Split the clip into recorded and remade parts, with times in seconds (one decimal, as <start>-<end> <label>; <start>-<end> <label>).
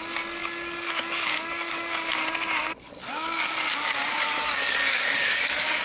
0.0-0.4 recorded; 0.4-2.3 remade; 2.3-3.0 recorded; 3.0-5.8 remade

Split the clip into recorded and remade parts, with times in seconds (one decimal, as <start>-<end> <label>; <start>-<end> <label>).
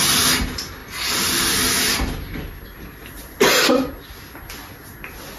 0.0-5.4 recorded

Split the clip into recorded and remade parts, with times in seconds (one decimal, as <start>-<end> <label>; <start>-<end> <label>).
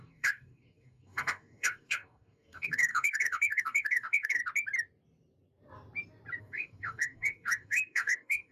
0.0-4.4 remade; 4.4-6.4 recorded; 6.4-8.5 remade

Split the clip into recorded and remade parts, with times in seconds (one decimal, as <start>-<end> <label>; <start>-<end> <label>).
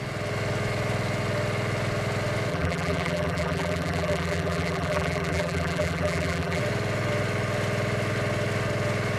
0.0-2.5 recorded; 2.5-6.6 remade; 6.6-9.2 recorded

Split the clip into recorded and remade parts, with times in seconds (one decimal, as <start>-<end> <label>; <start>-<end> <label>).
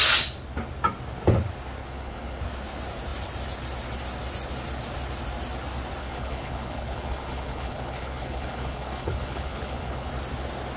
0.0-1.8 recorded; 1.8-2.4 remade; 2.4-6.0 recorded; 6.0-10.1 remade; 10.1-10.8 recorded